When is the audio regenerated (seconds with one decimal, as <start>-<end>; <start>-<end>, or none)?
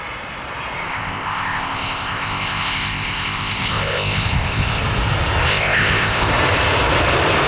0.9-4.8; 5.5-6.3